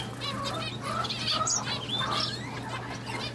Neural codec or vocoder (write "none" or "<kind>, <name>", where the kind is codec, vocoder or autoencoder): none